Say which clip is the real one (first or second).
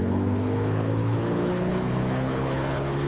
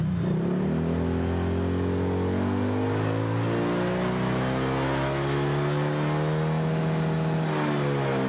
second